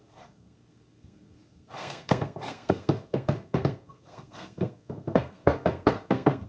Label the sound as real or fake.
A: fake